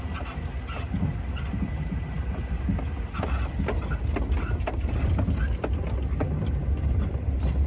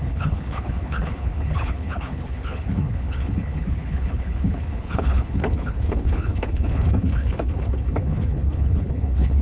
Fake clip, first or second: second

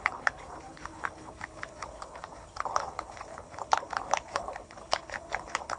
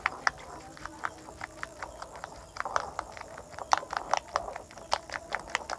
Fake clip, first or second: first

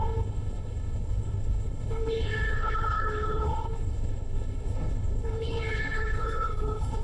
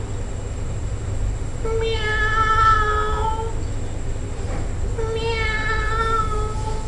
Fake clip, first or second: first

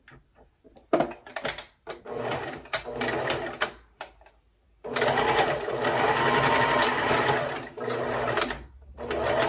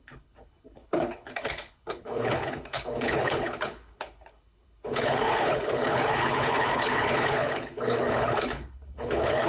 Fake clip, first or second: second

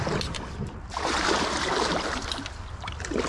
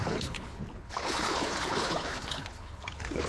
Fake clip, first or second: second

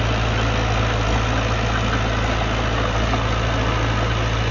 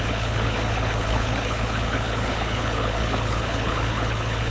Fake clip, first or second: second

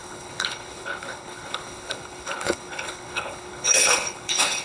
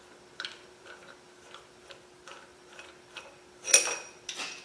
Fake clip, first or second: first